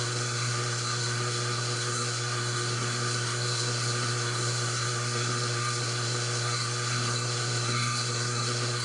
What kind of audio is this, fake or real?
fake